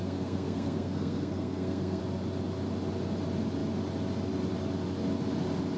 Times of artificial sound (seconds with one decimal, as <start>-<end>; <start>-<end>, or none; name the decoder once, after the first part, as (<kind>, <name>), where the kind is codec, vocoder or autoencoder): 0.0-2.0 (codec, SNAC)